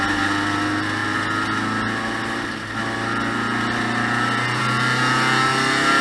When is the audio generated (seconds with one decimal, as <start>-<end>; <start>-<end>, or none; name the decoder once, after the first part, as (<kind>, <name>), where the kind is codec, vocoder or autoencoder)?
none